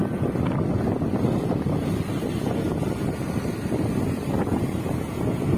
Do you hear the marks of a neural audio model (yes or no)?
no